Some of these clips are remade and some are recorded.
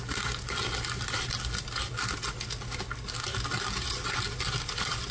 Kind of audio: recorded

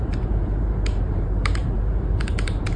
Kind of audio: remade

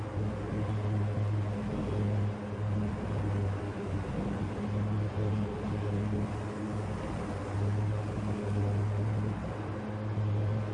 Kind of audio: recorded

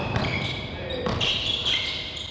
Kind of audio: recorded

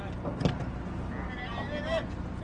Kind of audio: recorded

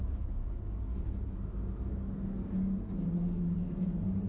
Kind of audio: recorded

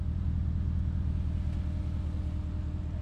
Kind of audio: recorded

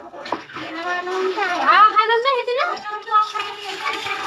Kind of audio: remade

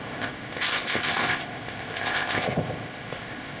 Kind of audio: remade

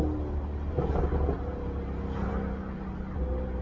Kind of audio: recorded